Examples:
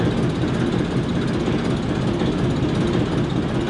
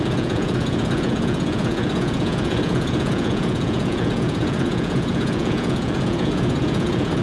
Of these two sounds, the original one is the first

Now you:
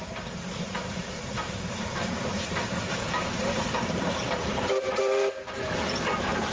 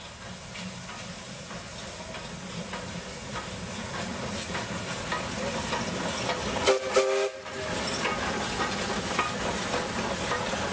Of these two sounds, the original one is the second